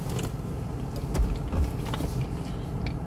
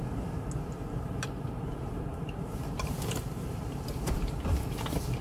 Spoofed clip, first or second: second